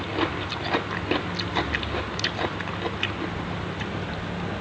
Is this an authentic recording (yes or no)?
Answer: yes